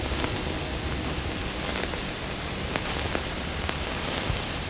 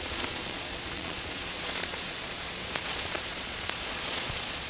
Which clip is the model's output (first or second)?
second